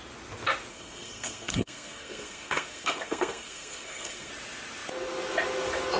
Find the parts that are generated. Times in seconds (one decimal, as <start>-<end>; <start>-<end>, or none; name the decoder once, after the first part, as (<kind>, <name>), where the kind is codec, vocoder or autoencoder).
0.7-4.3 (codec, SNAC)